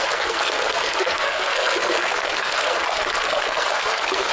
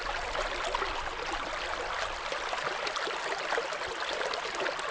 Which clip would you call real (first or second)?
second